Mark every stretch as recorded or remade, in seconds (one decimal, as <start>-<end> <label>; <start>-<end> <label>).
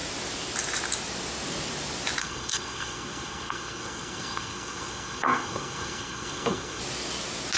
0.0-2.2 recorded; 2.2-6.8 remade; 6.8-7.6 recorded